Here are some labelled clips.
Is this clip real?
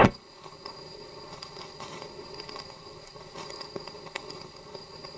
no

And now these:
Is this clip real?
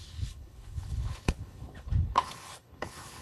no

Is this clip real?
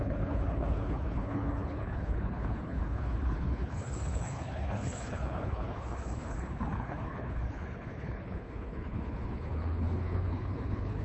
no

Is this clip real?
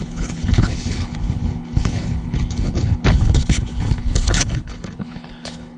no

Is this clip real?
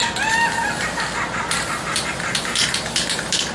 yes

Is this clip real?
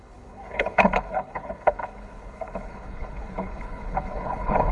no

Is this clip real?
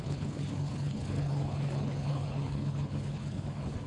no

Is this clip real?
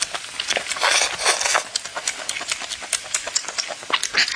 yes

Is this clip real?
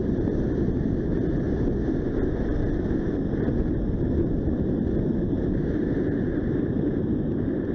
yes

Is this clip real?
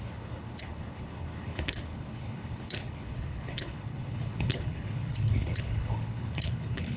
no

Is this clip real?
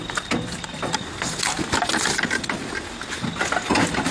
yes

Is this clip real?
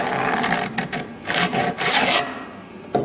yes